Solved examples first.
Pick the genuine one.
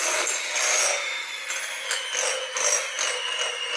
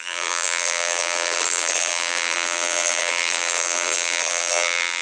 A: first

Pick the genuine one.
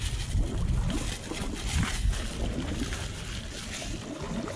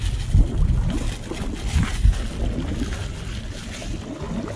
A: second